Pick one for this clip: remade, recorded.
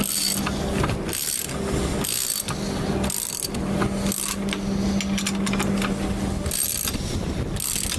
recorded